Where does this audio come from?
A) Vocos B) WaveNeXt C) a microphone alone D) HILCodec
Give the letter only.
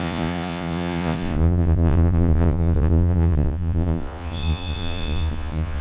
A